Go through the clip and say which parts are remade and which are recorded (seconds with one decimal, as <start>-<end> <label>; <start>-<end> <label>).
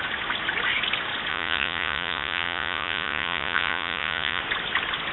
0.0-1.3 recorded; 1.3-4.4 remade; 4.4-5.1 recorded